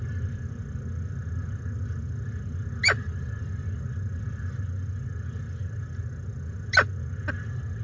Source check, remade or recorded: recorded